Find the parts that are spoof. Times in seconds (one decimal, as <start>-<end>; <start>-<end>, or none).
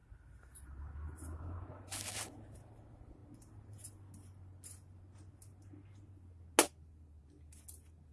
none